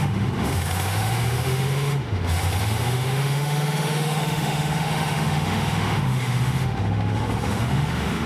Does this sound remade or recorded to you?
remade